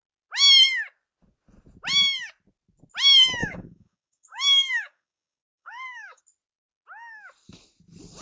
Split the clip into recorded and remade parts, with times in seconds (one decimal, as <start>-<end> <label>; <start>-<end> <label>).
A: 0.0-3.4 recorded; 3.4-6.2 remade; 6.2-8.2 recorded